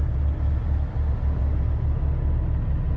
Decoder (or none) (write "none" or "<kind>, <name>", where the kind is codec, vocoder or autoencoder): none